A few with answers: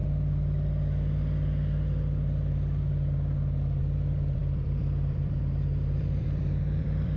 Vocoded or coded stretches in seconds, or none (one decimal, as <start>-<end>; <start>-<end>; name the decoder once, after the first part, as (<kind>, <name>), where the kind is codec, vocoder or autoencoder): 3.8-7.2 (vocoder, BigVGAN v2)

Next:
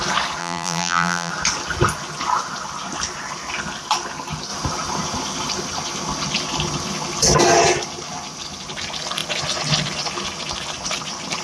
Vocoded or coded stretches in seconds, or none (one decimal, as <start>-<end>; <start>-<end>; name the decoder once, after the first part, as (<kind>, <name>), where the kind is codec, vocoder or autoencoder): 0.4-1.3 (vocoder, BigVGAN v2)

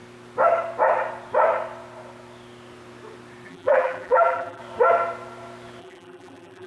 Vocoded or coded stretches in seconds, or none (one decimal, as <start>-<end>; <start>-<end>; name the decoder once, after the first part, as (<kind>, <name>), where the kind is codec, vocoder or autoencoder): 3.5-4.6 (vocoder, BigVGAN v2); 5.8-6.7

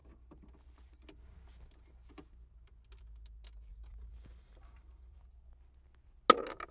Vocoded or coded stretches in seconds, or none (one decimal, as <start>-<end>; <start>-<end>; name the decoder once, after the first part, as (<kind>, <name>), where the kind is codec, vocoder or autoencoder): 3.7-5.2 (vocoder, BigVGAN v2)